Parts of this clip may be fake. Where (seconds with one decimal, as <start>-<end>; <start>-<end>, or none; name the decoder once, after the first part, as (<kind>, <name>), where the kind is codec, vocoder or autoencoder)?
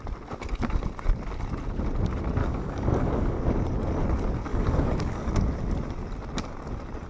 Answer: 2.4-3.4 (codec, DAC); 4.5-5.3